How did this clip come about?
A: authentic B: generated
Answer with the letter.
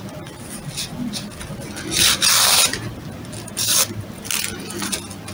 A